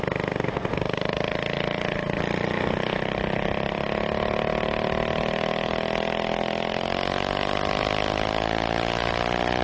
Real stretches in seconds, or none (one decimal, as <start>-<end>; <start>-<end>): 0.0-9.6

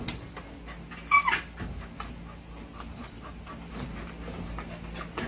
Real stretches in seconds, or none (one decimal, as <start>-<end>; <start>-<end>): 0.0-2.9; 3.5-5.3

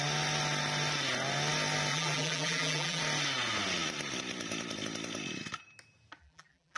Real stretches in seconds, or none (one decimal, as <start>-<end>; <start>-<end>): 0.0-1.9; 3.0-6.2

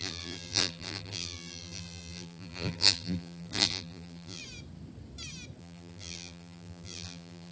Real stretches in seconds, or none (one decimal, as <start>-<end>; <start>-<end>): 4.4-5.6

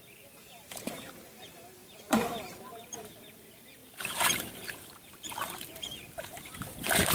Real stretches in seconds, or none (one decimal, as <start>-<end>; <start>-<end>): none

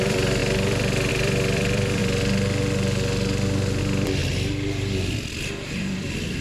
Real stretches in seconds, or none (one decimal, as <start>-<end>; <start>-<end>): 2.0-3.8

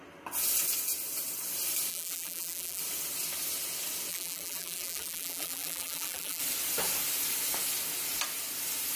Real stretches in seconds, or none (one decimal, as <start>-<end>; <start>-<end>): 0.0-1.9; 2.8-4.1; 6.4-9.0